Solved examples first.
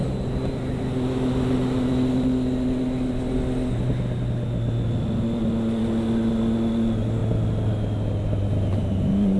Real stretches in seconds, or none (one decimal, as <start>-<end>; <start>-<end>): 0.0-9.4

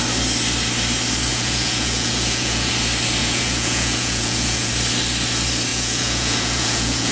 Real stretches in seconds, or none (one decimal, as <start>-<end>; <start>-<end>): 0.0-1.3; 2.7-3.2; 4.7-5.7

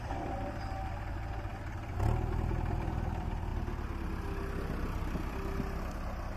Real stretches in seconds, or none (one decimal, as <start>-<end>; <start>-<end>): 1.5-2.7; 3.5-4.6